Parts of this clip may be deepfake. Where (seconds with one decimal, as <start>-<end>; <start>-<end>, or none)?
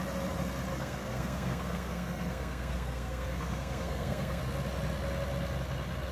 0.7-4.4